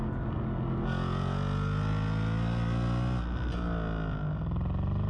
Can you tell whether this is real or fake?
real